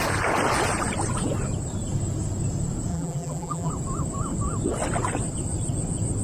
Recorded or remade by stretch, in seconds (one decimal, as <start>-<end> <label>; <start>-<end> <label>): 0.0-2.9 recorded; 2.9-3.7 remade; 3.7-6.2 recorded